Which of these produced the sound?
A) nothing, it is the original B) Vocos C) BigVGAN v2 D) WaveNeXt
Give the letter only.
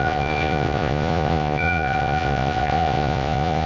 B